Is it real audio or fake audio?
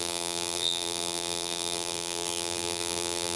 fake